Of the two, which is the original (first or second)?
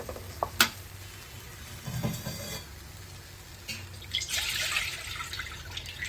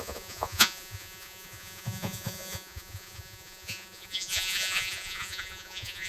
first